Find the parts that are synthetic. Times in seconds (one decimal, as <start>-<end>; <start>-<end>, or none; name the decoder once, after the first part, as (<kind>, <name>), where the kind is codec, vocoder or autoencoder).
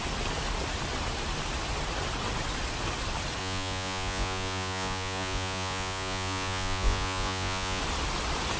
3.4-7.8 (vocoder, Vocos)